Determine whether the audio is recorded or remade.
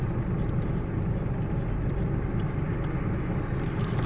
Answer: recorded